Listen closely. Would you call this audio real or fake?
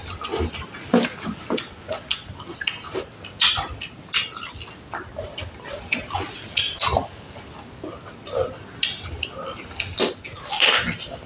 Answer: real